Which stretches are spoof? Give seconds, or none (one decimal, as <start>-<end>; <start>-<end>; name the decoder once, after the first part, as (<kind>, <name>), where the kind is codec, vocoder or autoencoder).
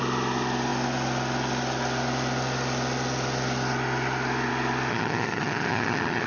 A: 4.9-6.3 (vocoder, HiFi-GAN)